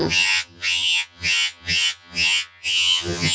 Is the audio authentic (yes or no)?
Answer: no